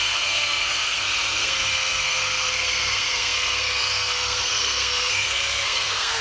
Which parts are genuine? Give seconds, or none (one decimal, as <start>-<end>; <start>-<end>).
none